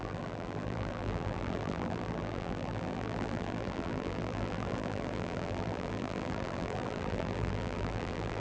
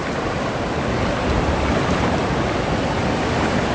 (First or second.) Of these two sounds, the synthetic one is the first